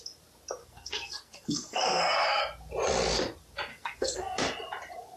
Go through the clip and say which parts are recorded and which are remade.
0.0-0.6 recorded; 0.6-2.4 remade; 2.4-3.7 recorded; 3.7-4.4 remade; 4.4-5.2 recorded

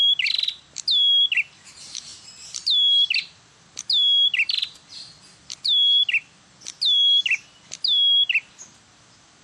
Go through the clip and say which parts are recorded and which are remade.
0.0-9.4 recorded

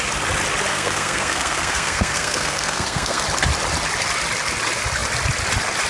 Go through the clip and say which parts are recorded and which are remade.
0.0-0.7 recorded; 0.7-3.2 remade; 3.2-5.9 recorded

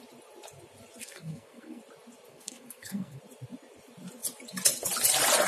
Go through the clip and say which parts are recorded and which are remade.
0.0-1.0 recorded; 1.0-1.8 remade; 1.8-2.3 recorded; 2.3-3.2 remade; 3.2-5.5 recorded

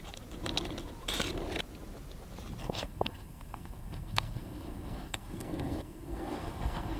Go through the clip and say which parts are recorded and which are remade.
0.0-2.6 recorded; 2.6-7.0 remade

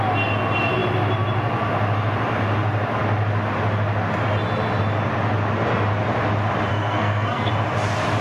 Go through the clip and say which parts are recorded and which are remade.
0.0-6.7 recorded; 6.7-7.5 remade; 7.5-8.2 recorded

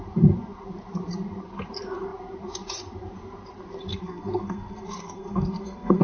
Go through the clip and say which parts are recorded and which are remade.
0.0-3.9 recorded; 3.9-6.0 remade

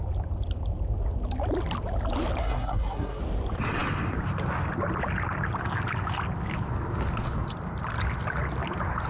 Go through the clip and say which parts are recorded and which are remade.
0.0-2.4 recorded; 2.4-3.2 remade; 3.2-9.1 recorded